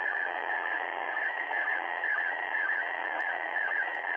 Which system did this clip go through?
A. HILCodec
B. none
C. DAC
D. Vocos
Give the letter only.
D